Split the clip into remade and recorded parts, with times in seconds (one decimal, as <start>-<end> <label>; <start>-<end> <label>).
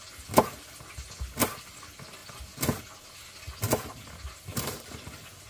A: 0.0-4.5 recorded; 4.5-5.5 remade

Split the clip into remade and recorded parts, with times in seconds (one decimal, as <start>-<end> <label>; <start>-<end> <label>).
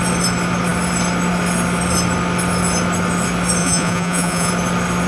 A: 0.0-3.6 recorded; 3.6-4.5 remade; 4.5-5.1 recorded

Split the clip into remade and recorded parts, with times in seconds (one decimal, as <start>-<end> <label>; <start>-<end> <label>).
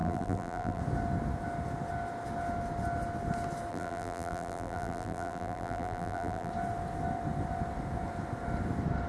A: 0.0-0.8 remade; 0.8-3.7 recorded; 3.7-6.5 remade; 6.5-9.1 recorded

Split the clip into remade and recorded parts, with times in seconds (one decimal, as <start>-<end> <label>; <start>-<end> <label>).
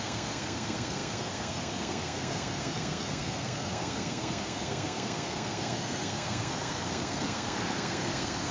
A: 0.0-8.5 remade